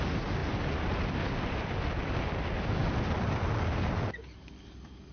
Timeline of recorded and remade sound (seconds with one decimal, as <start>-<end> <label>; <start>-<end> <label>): 0.0-5.1 recorded